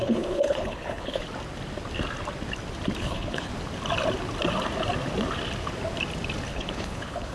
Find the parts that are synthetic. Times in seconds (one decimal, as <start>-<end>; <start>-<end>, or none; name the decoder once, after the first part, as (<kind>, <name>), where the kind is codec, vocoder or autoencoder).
0.0-1.2 (codec, HILCodec); 3.0-3.5; 6.5-7.3